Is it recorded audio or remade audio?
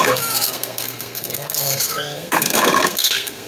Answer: remade